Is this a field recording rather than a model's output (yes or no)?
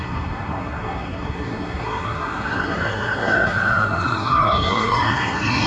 no